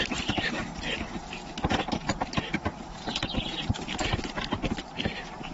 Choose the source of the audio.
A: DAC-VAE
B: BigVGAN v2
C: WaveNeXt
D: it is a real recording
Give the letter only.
D